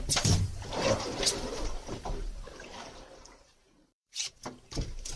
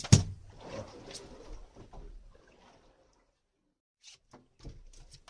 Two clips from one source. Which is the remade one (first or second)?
first